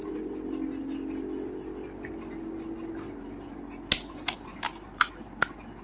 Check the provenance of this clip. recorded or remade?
recorded